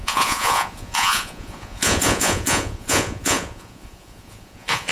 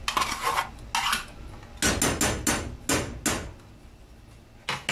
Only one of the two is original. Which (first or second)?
second